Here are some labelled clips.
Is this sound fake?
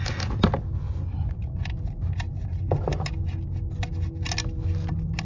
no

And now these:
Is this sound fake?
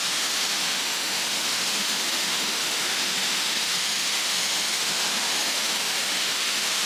yes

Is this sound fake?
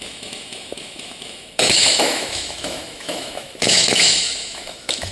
yes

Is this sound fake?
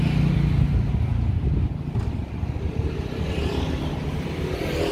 no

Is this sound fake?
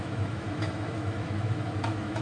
yes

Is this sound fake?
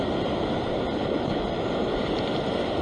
no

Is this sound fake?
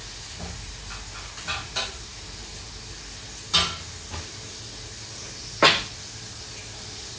no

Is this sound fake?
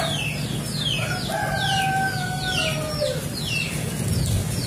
no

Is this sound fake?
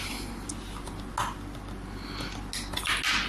no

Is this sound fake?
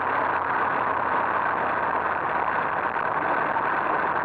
no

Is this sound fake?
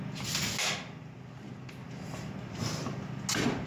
no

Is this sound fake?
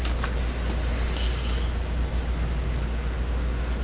no